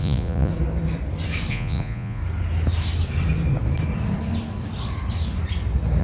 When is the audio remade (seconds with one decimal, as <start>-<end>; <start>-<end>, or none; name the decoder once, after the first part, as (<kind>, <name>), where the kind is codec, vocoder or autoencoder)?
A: 0.0-0.5 (vocoder, Vocos); 1.5-2.2